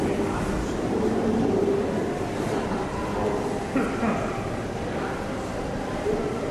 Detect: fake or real real